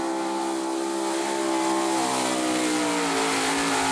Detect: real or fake real